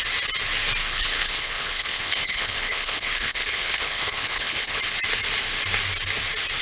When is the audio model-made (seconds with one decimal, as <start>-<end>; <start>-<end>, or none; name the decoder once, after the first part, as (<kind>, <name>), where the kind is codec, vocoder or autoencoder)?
0.8-4.8 (codec, HILCodec)